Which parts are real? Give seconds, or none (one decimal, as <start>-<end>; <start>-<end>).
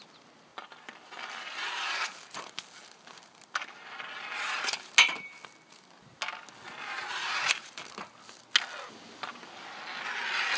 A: 0.0-0.5; 4.9-7.2; 8.0-10.6